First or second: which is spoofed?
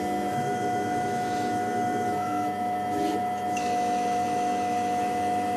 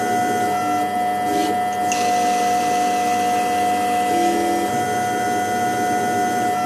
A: first